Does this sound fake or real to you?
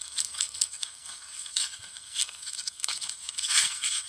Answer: fake